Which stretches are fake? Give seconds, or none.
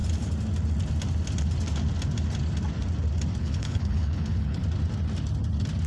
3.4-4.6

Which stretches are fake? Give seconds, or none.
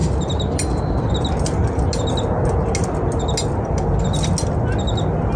0.0-1.1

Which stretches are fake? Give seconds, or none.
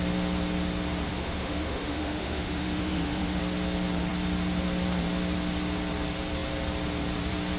1.1-3.4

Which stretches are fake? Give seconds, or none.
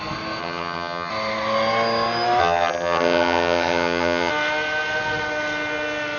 0.4-1.1; 2.4-4.3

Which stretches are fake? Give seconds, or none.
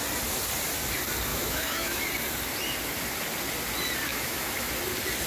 1.3-2.0; 4.1-4.7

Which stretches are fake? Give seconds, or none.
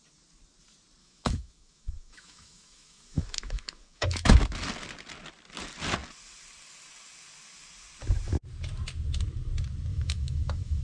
1.0-4.4; 9.9-10.8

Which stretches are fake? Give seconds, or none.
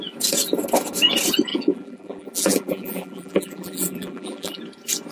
1.5-4.6